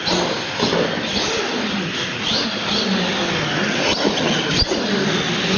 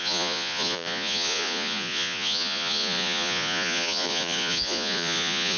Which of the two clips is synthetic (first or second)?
second